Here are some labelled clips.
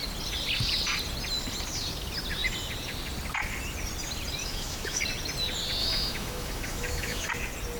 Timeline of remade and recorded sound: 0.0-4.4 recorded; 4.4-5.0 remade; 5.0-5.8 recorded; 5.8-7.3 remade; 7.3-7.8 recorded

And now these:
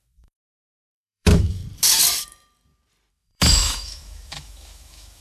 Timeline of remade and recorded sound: 0.0-1.6 remade; 1.6-3.1 recorded; 3.1-5.2 remade